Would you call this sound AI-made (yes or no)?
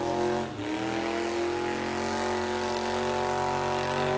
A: no